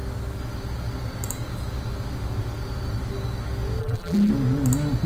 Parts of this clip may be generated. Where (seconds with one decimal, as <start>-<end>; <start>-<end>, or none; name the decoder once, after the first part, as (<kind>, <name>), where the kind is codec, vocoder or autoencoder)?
3.8-4.3 (vocoder, BigVGAN v2)